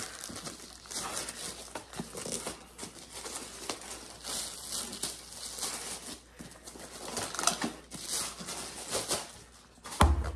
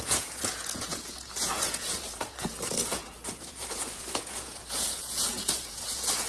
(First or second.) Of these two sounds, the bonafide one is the first